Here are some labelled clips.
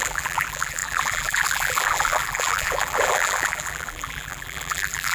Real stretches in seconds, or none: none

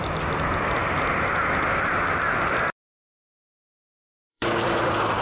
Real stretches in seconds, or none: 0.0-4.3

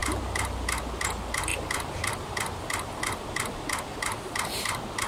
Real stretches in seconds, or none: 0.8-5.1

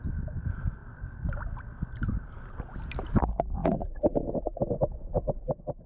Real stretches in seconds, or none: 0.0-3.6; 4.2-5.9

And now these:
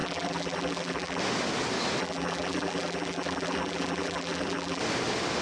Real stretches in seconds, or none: 1.2-2.0; 4.8-5.4

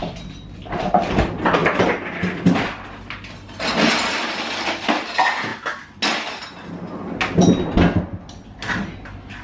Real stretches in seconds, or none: 1.6-4.0; 5.5-8.7

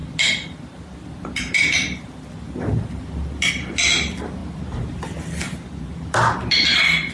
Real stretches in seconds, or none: 0.0-7.1

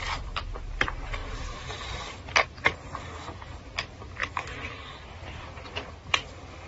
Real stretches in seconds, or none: none